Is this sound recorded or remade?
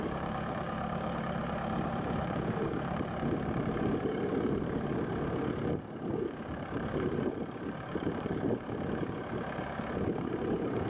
remade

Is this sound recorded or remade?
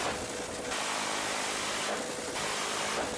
recorded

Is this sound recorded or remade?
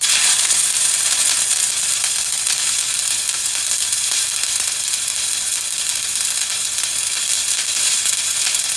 remade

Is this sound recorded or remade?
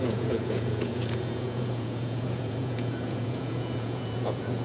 remade